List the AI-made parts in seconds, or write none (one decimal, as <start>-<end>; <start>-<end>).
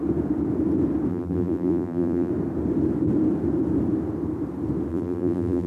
1.1-2.3; 4.9-5.7